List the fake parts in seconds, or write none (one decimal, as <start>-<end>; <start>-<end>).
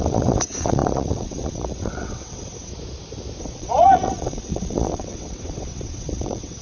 0.0-2.7; 3.4-6.6